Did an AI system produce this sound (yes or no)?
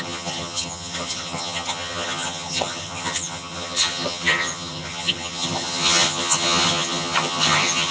yes